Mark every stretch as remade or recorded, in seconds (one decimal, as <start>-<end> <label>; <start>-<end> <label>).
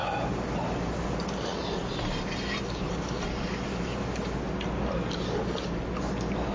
0.0-6.5 recorded